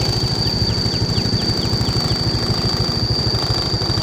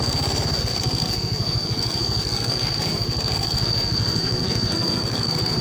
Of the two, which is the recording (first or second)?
first